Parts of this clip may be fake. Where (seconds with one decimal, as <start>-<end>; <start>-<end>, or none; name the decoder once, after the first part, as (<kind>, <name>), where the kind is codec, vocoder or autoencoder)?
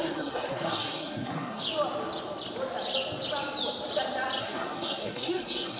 0.0-1.6 (codec, SNAC); 4.4-5.8